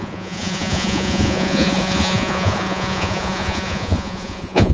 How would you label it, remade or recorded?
remade